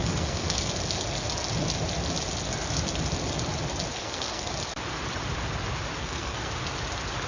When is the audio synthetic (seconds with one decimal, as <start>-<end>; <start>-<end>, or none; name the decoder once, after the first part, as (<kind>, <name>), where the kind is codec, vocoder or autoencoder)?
0.0-0.7 (codec, SNAC); 4.0-4.5; 6.0-6.5

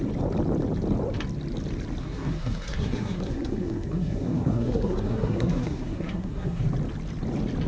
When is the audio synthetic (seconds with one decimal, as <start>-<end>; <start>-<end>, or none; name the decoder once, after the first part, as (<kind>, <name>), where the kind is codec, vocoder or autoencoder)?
2.0-6.6 (codec, SNAC)

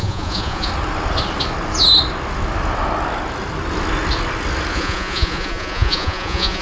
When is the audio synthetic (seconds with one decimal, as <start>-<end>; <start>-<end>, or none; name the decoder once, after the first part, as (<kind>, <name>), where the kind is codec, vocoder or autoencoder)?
0.0-0.7 (vocoder, Vocos); 4.7-6.6